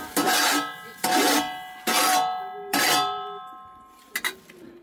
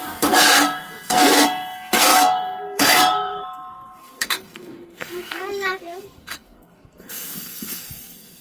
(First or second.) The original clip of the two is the first